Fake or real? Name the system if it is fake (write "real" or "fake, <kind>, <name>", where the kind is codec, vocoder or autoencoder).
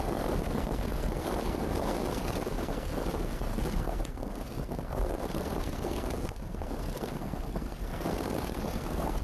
fake, codec, SNAC